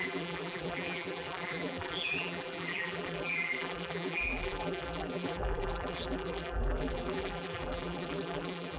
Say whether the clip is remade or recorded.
remade